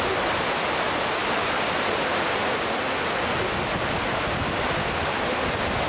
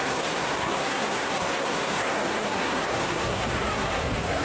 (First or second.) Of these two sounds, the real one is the first